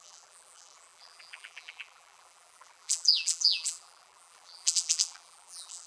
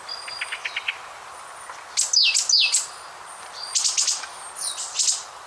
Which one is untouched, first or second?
second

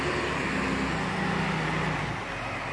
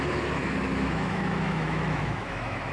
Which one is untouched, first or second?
first